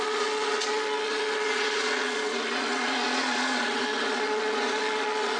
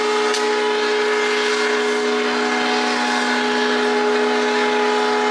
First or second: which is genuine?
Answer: second